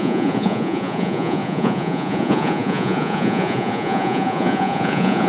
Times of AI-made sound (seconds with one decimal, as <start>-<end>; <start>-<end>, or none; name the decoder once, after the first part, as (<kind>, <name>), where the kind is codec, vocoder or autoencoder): 0.0-5.3 (vocoder, Vocos)